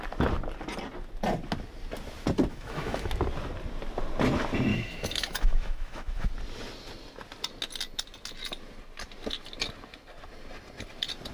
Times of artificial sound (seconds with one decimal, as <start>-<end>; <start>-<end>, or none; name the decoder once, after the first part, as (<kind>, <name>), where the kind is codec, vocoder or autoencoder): 2.5-3.1 (autoencoder, DAC-VAE); 4.7-6.3